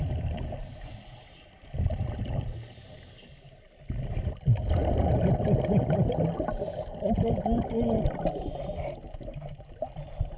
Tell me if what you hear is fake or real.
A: real